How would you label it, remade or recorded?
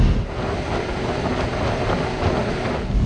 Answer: recorded